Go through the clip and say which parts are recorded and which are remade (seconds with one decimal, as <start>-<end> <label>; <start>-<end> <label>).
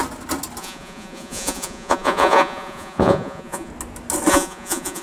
0.0-0.6 recorded; 0.6-3.7 remade; 3.7-4.3 recorded; 4.3-5.0 remade